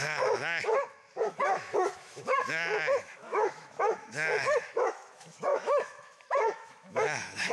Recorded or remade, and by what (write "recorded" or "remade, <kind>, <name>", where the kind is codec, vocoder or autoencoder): remade, autoencoder, DAC-VAE